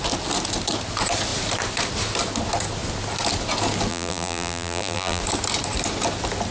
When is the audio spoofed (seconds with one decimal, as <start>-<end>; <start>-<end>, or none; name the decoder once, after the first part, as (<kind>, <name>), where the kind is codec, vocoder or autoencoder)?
3.9-5.2 (vocoder, BigVGAN v2)